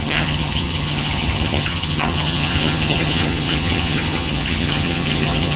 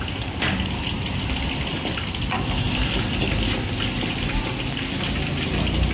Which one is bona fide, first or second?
second